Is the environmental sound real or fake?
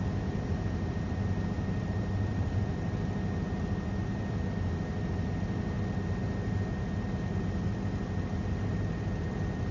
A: real